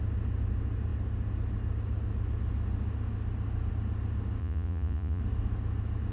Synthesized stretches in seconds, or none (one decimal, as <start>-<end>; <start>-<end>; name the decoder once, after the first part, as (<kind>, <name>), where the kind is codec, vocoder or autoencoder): 4.4-5.2 (vocoder, Vocos)